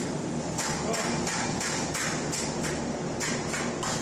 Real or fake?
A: real